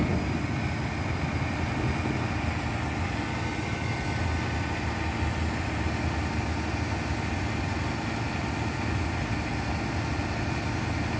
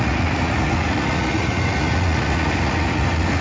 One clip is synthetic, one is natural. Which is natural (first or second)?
first